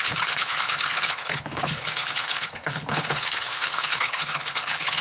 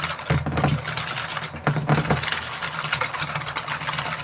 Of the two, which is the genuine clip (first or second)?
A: second